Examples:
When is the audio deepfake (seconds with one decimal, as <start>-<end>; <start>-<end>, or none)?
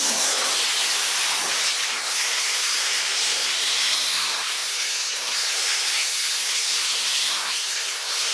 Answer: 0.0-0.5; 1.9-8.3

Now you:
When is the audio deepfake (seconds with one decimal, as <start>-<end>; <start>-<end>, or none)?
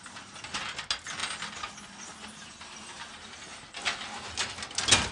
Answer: none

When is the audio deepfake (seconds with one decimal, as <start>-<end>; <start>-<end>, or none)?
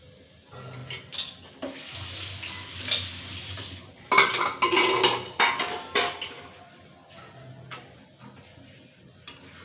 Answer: none